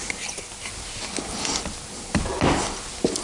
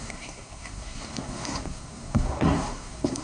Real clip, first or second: first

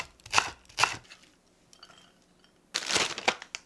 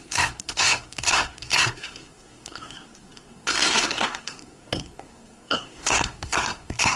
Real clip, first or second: first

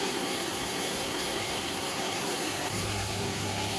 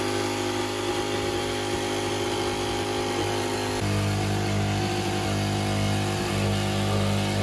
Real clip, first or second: second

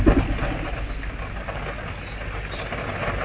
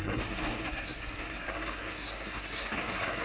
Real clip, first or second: first